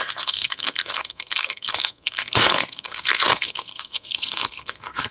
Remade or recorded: remade